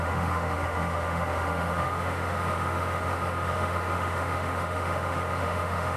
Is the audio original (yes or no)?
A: no